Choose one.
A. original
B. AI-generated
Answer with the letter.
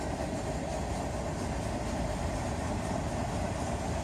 A